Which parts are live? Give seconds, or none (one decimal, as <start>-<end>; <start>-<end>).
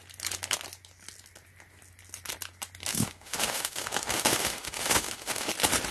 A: 0.0-2.9; 5.5-5.9